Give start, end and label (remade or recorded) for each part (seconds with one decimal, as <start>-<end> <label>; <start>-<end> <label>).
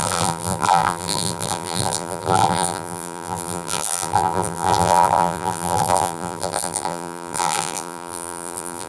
0.0-8.9 remade